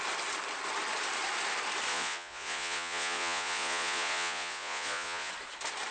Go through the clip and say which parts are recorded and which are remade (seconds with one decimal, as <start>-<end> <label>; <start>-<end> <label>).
0.0-1.9 recorded; 1.9-5.3 remade; 5.3-5.9 recorded